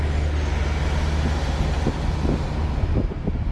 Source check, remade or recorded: recorded